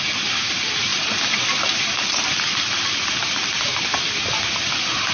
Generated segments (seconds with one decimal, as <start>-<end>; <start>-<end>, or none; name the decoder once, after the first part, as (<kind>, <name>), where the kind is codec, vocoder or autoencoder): 0.9-4.0 (vocoder, BigVGAN v2)